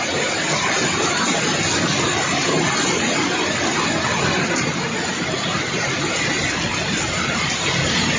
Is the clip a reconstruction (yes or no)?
no